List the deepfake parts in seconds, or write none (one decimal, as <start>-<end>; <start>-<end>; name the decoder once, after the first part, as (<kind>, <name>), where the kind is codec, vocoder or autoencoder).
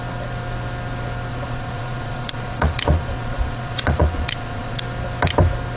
1.3-4.8 (vocoder, Vocos)